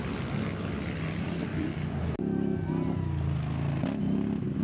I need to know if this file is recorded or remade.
recorded